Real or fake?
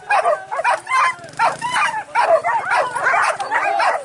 fake